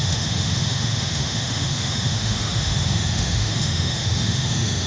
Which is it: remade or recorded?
remade